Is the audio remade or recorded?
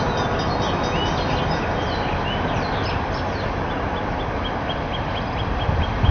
recorded